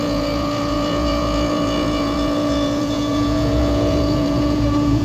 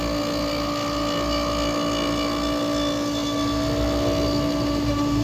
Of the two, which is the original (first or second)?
second